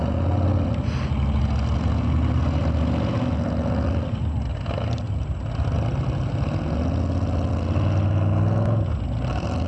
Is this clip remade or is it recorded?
recorded